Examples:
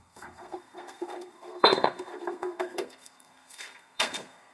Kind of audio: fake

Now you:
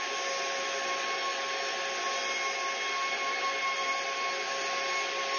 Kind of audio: real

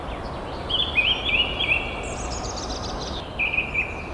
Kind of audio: real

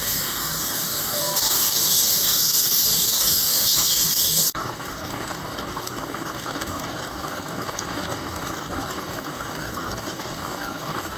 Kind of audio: fake